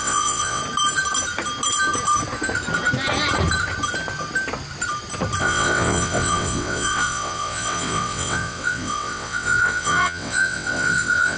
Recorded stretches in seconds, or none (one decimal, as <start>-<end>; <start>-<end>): 0.6-5.4